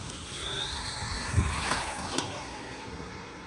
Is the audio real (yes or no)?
no